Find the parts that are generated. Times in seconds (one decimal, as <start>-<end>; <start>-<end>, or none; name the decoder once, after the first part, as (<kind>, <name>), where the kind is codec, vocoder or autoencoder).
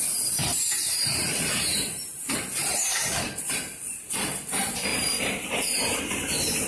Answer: 0.4-3.8 (vocoder, BigVGAN v2); 4.9-6.0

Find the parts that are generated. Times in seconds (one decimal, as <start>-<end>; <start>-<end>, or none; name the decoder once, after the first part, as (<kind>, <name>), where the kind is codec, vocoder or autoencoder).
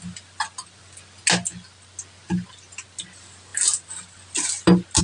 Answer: none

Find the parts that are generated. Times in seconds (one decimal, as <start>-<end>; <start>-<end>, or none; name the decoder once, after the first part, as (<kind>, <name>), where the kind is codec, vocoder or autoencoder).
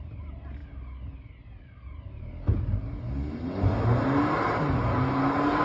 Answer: none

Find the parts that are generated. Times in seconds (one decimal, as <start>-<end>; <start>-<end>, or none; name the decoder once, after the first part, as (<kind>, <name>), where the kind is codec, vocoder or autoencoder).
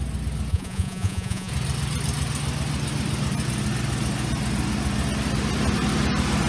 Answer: 0.5-1.5 (vocoder, Vocos)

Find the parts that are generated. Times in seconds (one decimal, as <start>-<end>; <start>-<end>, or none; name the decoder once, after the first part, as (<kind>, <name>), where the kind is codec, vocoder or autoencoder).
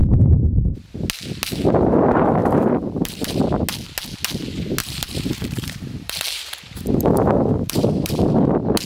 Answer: 0.0-0.8 (vocoder, BigVGAN v2); 2.4-3.4; 4.8-8.1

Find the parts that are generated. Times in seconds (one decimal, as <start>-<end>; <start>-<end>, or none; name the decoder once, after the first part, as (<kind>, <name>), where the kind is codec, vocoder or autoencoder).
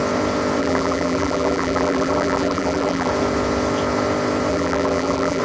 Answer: 0.6-3.1 (vocoder, BigVGAN v2); 4.5-5.4